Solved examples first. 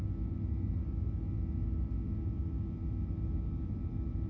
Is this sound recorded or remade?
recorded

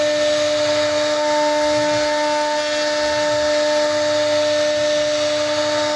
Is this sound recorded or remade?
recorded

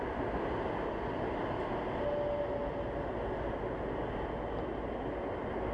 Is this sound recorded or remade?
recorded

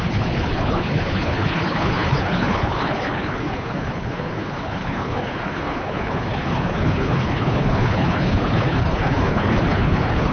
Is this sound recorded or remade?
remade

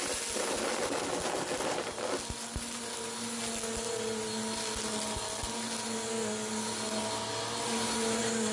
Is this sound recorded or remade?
recorded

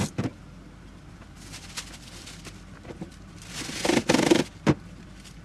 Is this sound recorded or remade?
recorded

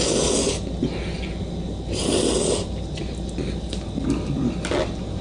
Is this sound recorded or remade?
recorded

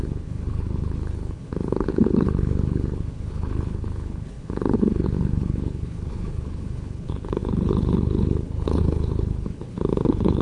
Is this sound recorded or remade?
remade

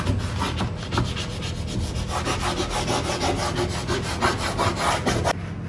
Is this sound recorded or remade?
recorded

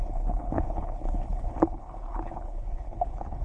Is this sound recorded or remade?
remade